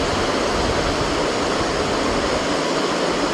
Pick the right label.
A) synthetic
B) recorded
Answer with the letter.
B